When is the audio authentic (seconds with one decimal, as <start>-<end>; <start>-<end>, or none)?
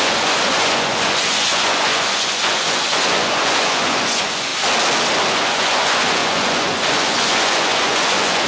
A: 4.5-5.3